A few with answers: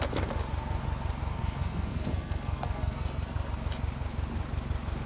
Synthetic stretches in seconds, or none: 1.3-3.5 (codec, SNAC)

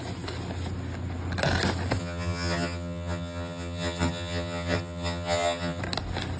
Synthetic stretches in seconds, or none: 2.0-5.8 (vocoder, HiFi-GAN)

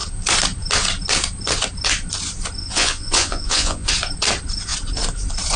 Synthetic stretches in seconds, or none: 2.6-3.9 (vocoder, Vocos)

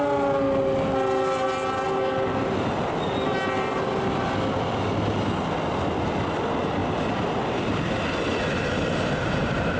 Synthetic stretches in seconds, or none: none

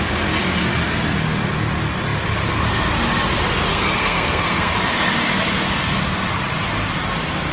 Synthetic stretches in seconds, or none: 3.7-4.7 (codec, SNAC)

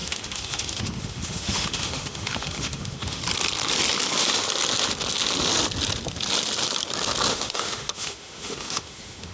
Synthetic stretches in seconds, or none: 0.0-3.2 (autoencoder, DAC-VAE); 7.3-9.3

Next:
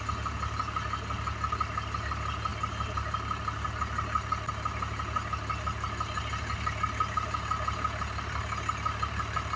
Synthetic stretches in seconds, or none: none

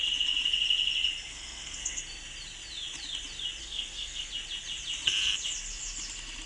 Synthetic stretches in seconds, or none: 1.3-2.0 (codec, SNAC); 3.6-4.3